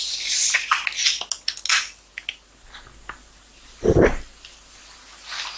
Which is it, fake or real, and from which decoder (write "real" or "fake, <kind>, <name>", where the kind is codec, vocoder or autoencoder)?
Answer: real